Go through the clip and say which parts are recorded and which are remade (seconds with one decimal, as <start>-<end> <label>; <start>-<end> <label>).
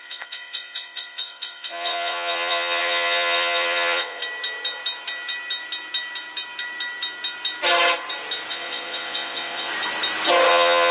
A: 0.0-4.2 remade; 4.2-8.5 recorded; 8.5-9.7 remade; 9.7-10.5 recorded; 10.5-10.9 remade